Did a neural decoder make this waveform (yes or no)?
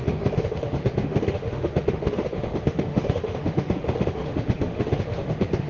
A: yes